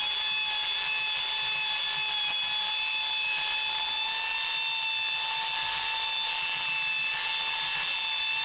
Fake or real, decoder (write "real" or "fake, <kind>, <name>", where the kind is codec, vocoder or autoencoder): real